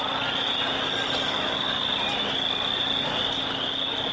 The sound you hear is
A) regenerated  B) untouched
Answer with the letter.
B